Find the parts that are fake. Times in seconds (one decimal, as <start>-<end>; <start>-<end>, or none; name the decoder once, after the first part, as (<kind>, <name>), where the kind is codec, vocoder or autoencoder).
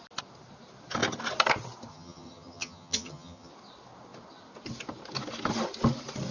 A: 1.9-3.5 (vocoder, HiFi-GAN)